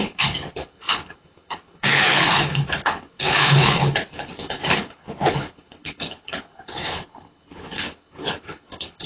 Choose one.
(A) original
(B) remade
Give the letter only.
B